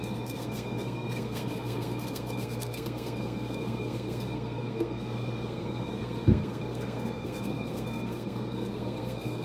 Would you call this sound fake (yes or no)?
yes